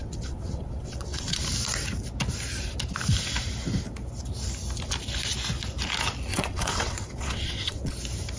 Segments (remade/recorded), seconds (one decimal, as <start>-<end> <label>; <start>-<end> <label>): 0.0-1.4 remade; 1.4-6.3 recorded; 6.3-7.9 remade; 7.9-8.4 recorded